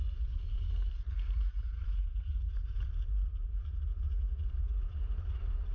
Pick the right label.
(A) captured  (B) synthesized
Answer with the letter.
B